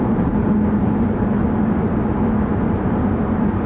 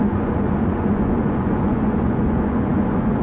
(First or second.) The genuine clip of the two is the first